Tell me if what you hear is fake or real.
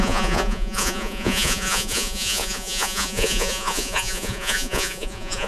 fake